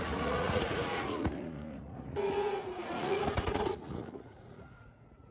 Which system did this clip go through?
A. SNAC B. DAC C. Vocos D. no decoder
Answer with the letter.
C